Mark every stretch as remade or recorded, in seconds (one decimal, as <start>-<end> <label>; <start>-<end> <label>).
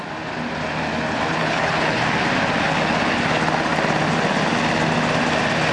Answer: 0.0-1.4 recorded; 1.4-2.0 remade; 2.0-5.7 recorded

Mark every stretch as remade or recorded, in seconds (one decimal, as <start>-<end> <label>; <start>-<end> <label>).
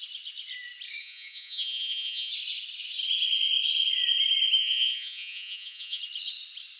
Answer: 0.0-1.0 recorded; 1.0-2.3 remade; 2.3-4.6 recorded; 4.6-6.0 remade; 6.0-6.8 recorded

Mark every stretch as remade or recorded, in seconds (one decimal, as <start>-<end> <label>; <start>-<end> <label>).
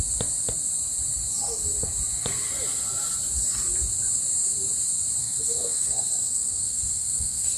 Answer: 0.0-5.2 recorded; 5.2-7.6 remade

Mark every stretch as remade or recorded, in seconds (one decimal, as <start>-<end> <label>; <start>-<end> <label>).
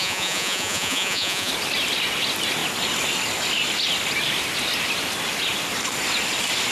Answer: 0.0-1.5 remade; 1.5-6.7 recorded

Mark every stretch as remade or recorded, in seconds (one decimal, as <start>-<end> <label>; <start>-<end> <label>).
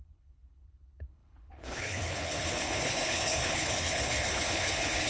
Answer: 0.0-5.1 remade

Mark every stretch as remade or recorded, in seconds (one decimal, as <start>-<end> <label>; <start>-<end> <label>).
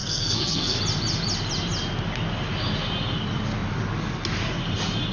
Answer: 0.0-0.8 remade; 0.8-5.1 recorded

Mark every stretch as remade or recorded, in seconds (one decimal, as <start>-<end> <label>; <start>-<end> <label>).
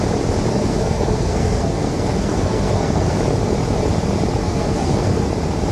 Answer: 0.0-0.5 recorded; 0.5-3.2 remade; 3.2-4.4 recorded; 4.4-5.3 remade; 5.3-5.7 recorded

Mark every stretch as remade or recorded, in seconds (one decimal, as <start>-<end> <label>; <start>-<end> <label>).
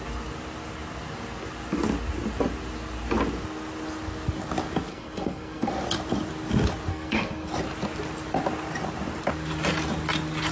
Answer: 0.0-4.9 recorded; 4.9-5.7 remade; 5.7-6.9 recorded; 6.9-7.5 remade; 7.5-10.5 recorded